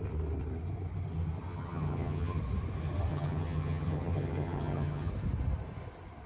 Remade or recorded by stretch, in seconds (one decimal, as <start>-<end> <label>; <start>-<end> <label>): 0.0-1.5 recorded; 1.5-2.4 remade; 2.4-3.1 recorded; 3.1-5.1 remade; 5.1-6.3 recorded